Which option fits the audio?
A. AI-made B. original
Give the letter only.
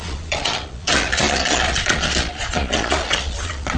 A